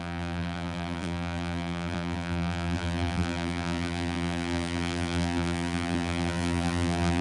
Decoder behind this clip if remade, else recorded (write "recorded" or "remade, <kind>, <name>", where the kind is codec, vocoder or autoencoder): remade, vocoder, BigVGAN v2